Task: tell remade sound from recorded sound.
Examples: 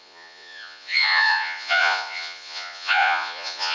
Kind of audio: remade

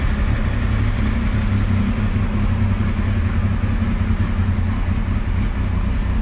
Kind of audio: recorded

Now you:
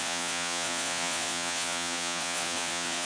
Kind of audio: remade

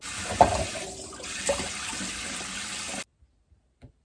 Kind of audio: recorded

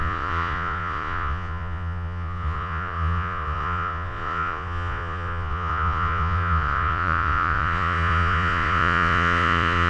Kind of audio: remade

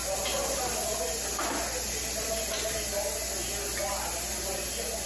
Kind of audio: recorded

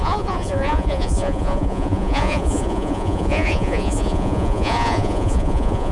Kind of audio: remade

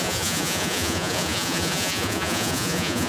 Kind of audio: remade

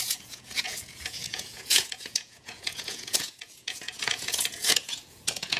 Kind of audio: remade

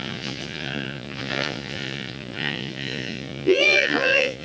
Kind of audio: remade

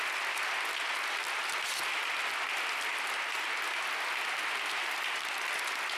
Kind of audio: recorded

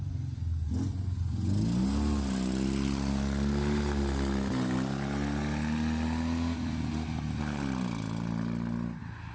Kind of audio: recorded